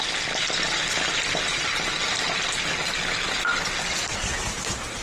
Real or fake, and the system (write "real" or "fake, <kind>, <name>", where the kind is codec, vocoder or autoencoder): real